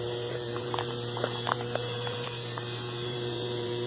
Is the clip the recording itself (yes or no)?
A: no